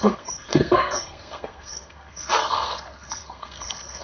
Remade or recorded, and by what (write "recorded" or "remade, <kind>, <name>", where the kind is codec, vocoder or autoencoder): remade, codec, SNAC